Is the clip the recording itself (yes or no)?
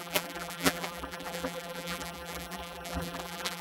no